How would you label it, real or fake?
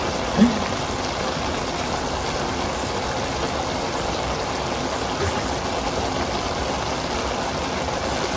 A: real